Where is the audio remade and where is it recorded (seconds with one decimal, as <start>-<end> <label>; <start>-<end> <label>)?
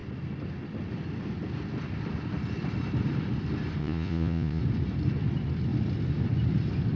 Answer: 0.0-3.8 recorded; 3.8-4.6 remade; 4.6-7.0 recorded